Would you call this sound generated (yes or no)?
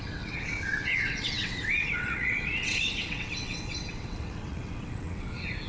yes